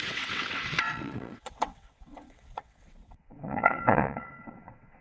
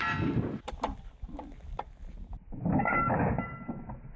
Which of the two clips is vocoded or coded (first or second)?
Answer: first